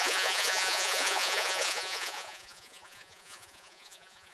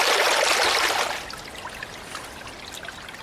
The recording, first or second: second